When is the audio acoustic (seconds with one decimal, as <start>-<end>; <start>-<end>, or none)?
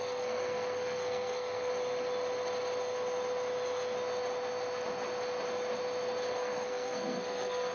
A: 1.7-6.3